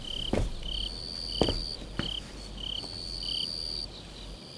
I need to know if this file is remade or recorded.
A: recorded